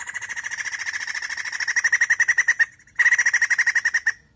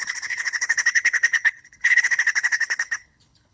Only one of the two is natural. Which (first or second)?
first